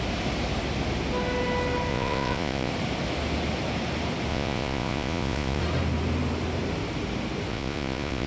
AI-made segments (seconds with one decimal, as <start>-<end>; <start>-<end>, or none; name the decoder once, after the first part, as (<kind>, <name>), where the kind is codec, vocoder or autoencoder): 1.9-2.7 (vocoder, Vocos); 4.3-5.6; 7.5-8.3